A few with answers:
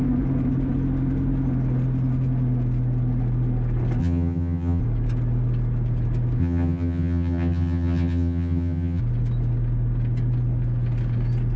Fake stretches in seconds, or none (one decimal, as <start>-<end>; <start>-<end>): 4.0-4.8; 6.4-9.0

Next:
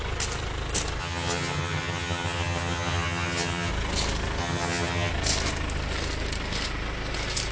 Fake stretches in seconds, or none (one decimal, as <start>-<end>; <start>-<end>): 1.0-3.7; 4.4-5.1

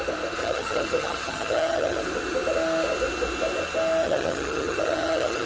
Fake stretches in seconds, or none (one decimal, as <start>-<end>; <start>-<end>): 0.4-2.0; 4.0-5.5